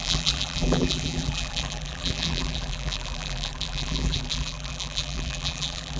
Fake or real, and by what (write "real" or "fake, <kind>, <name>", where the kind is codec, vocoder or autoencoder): fake, vocoder, BigVGAN v2